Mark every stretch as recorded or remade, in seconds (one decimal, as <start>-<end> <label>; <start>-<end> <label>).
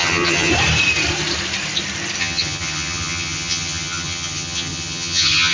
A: 0.0-0.5 remade; 0.5-2.2 recorded; 2.2-5.5 remade